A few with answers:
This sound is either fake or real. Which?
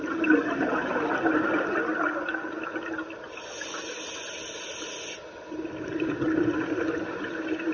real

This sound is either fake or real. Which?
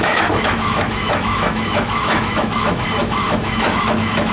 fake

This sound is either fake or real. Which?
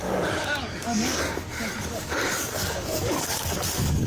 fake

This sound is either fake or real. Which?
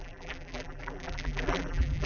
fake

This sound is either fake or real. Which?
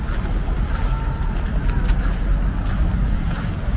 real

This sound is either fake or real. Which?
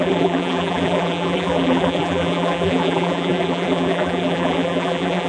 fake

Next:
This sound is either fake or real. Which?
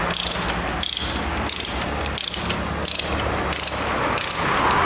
real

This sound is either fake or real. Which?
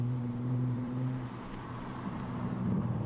fake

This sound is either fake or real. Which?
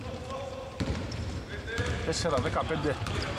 fake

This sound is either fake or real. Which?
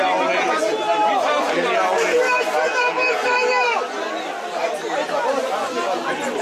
real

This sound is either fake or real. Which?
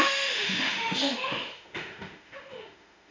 fake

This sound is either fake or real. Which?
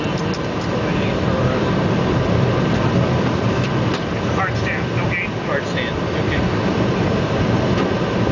real